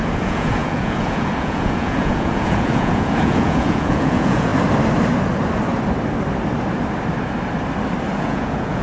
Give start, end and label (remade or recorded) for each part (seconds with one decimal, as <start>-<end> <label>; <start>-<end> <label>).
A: 0.0-4.5 remade; 4.5-8.2 recorded; 8.2-8.8 remade